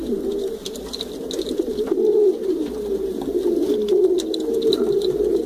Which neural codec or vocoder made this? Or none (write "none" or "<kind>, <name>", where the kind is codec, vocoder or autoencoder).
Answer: none